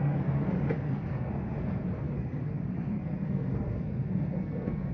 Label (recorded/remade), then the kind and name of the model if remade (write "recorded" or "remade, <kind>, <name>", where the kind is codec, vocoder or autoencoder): remade, codec, SNAC